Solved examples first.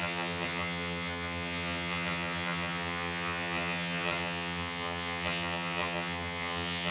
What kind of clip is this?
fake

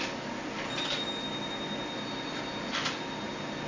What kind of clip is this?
real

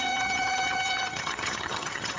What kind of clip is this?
fake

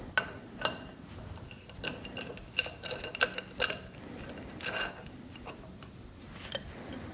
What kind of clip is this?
real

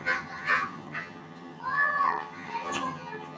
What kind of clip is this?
fake